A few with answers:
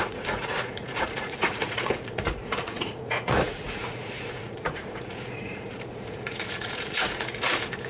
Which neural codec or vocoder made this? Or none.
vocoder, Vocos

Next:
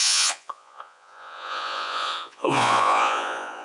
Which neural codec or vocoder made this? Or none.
vocoder, Vocos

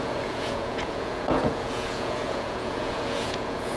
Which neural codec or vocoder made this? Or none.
vocoder, Vocos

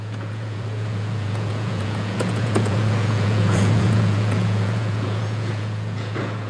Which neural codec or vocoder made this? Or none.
vocoder, Vocos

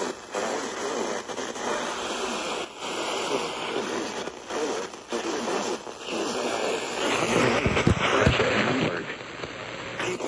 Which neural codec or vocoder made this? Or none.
none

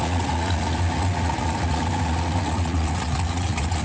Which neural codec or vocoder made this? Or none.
vocoder, Vocos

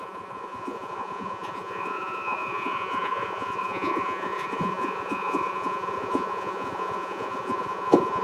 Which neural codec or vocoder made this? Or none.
vocoder, Vocos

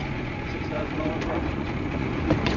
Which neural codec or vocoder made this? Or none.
vocoder, Vocos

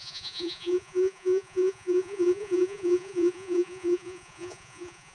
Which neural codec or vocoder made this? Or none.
vocoder, Vocos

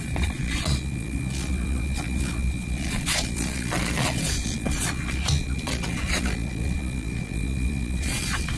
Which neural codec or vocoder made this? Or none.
vocoder, Vocos